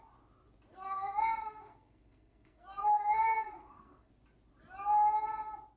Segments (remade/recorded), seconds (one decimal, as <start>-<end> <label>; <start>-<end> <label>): 0.0-0.7 recorded; 0.7-4.1 remade; 4.1-5.8 recorded